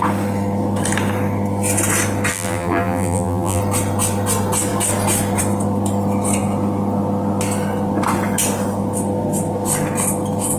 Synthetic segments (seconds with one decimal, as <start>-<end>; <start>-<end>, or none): 2.3-3.6